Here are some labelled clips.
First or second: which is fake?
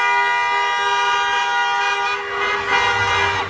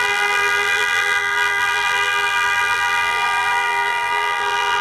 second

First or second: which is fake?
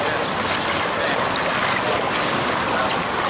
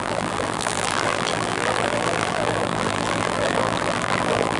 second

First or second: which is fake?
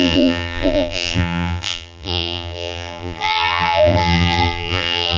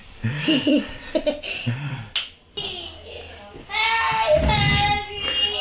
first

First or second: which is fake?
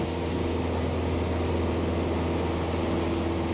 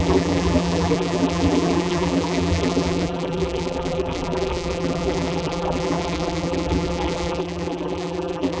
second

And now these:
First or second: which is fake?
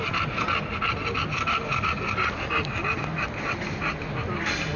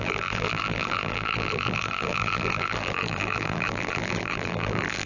second